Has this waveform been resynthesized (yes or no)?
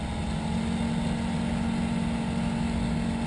no